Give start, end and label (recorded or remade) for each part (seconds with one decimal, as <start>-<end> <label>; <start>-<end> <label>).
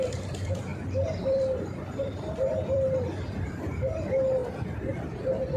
0.0-4.4 remade; 4.4-5.0 recorded; 5.0-5.6 remade